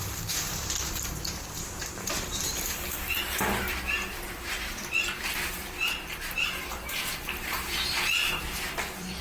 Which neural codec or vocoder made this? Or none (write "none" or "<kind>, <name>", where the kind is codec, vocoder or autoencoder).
vocoder, BigVGAN v2